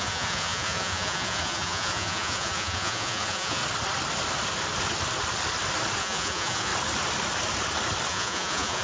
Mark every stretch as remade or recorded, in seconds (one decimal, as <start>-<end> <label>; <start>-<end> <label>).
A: 0.0-3.6 remade; 3.6-6.0 recorded; 6.0-6.7 remade; 6.7-8.1 recorded; 8.1-8.8 remade